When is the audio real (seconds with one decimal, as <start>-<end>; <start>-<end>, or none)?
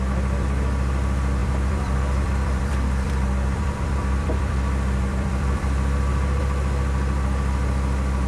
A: 0.0-1.4; 6.4-8.3